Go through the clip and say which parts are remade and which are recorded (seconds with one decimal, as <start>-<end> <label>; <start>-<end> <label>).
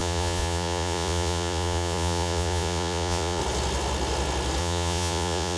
0.0-3.4 remade; 3.4-4.6 recorded; 4.6-5.6 remade